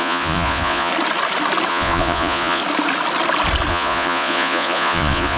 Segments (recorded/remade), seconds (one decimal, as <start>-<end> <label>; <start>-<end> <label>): 0.0-0.9 remade; 0.9-1.7 recorded; 1.7-2.6 remade; 2.6-3.7 recorded; 3.7-5.4 remade

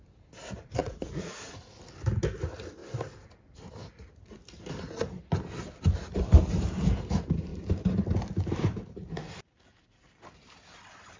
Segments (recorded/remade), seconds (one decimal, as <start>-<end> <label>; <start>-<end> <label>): 0.0-0.8 recorded; 0.8-1.6 remade; 1.6-11.2 recorded

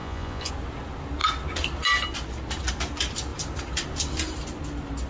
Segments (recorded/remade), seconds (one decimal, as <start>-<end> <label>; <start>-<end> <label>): 0.0-0.5 remade; 0.5-5.1 recorded

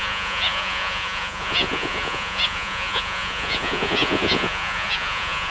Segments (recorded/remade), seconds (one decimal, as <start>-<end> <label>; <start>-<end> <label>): 0.0-5.5 remade

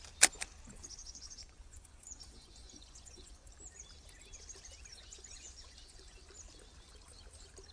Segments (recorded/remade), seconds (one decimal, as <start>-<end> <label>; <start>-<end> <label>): 0.0-1.0 recorded; 1.0-3.5 remade; 3.5-4.9 recorded; 4.9-6.2 remade; 6.2-7.7 recorded

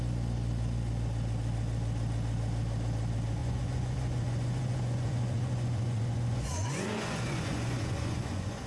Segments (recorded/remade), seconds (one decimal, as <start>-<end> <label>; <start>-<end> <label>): 0.0-3.4 recorded; 3.4-8.7 remade